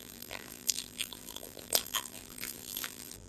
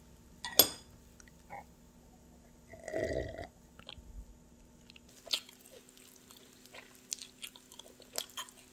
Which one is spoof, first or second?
first